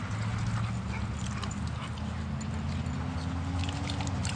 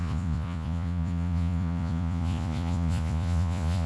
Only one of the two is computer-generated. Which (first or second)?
second